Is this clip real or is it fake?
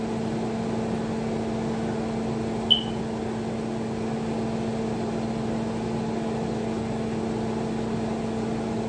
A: real